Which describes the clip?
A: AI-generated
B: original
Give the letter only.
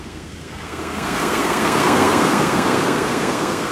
A